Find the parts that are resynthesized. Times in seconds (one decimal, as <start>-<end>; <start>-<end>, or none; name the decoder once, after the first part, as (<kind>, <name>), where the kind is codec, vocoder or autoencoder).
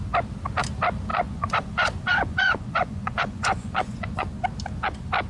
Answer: 1.1-4.3 (vocoder, Vocos)